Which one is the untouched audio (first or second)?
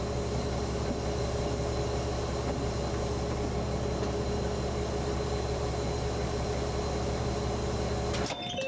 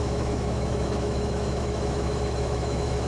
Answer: first